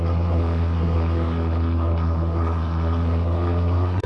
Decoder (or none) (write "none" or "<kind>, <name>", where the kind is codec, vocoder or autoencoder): codec, SNAC